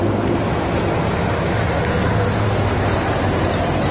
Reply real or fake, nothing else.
real